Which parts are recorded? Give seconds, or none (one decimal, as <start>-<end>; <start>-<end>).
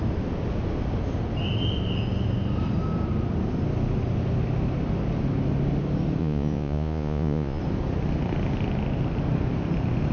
0.0-6.2; 7.6-10.1